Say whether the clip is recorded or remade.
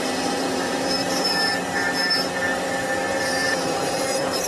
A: remade